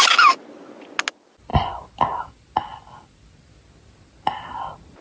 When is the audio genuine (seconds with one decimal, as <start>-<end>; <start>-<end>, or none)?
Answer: 0.0-5.0